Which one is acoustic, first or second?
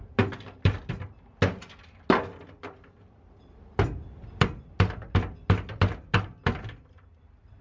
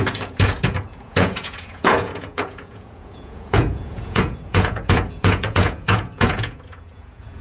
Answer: first